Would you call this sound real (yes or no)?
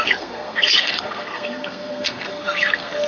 no